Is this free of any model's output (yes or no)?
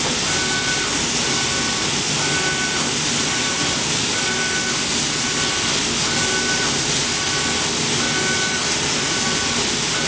yes